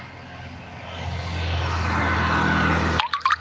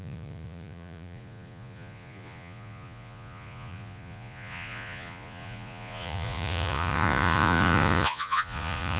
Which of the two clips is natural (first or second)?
first